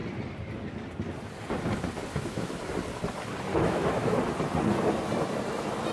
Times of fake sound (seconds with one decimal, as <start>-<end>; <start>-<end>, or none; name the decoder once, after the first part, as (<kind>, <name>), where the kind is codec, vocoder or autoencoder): 2.1-2.6 (autoencoder, DAC-VAE); 3.5-4.2